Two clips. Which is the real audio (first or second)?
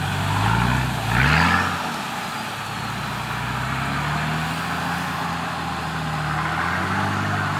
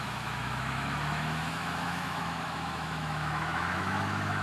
first